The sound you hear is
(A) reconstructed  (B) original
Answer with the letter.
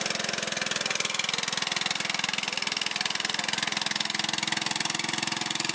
B